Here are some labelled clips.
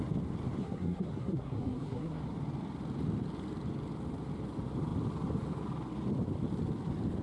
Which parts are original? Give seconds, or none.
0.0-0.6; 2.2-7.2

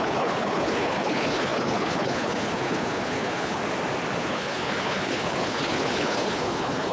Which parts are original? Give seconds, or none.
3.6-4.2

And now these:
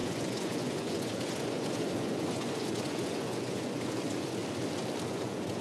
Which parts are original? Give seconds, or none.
4.4-5.1

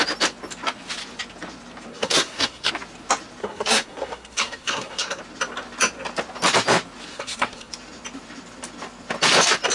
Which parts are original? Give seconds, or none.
0.0-1.9; 2.7-3.4; 5.2-7.1; 7.7-9.7